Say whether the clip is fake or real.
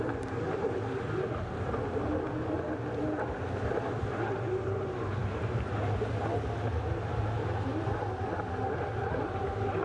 real